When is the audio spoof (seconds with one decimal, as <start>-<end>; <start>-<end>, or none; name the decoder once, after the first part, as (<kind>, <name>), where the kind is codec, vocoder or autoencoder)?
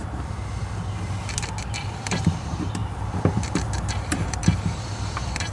0.0-0.4 (vocoder, BigVGAN v2); 1.6-5.5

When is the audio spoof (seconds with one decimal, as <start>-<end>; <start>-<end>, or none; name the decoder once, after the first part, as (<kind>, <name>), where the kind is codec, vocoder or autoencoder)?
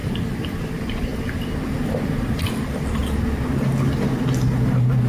0.0-1.1 (vocoder, BigVGAN v2); 1.7-3.0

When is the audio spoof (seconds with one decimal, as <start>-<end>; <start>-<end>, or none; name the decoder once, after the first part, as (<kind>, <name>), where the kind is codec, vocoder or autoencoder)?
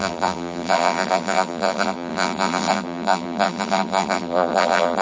0.0-5.0 (vocoder, BigVGAN v2)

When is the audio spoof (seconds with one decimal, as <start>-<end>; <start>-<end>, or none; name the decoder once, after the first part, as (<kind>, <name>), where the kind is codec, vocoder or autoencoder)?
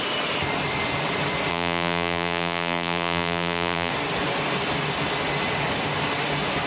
1.5-3.9 (vocoder, BigVGAN v2)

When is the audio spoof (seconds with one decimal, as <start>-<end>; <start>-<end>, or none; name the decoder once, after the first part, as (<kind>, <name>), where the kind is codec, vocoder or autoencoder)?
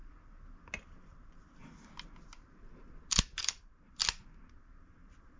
0.8-1.6 (vocoder, BigVGAN v2); 3.4-4.0; 4.8-5.4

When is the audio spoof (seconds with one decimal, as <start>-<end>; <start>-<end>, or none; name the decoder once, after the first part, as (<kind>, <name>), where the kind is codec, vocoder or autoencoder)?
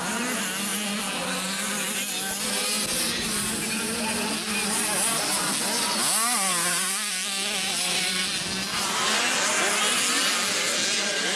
6.5-8.2 (vocoder, BigVGAN v2)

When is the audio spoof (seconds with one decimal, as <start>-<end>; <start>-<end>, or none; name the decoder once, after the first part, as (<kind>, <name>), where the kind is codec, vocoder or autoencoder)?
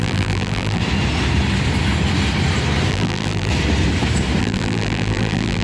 0.0-0.8 (vocoder, BigVGAN v2); 2.9-3.5; 4.4-5.6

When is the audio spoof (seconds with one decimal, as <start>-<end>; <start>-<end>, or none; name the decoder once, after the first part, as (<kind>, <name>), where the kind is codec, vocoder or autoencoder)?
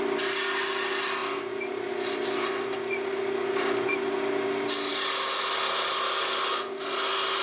none